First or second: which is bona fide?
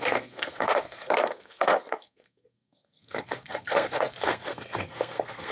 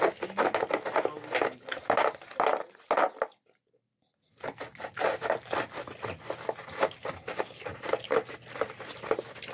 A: second